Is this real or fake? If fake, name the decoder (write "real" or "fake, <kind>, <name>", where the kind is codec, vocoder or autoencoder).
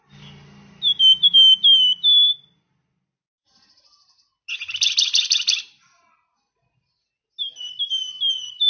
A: real